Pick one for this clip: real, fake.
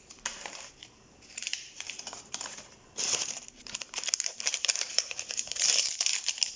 fake